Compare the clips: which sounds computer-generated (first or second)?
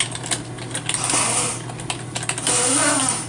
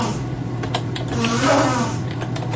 second